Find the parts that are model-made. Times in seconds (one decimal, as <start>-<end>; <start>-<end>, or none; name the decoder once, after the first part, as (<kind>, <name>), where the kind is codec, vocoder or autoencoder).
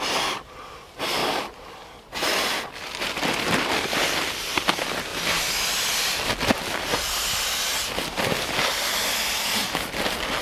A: none